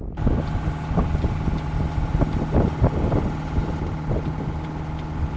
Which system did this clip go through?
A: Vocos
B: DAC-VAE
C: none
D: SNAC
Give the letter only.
C